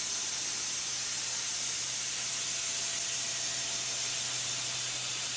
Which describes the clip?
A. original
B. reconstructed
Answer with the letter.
A